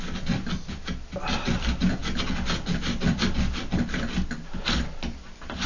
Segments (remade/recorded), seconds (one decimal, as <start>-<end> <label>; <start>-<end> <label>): 0.0-5.7 recorded